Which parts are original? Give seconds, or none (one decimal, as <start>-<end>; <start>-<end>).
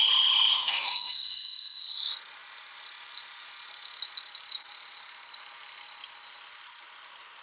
0.0-0.5; 1.8-7.4